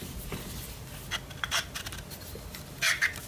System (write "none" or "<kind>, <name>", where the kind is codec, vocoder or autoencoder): none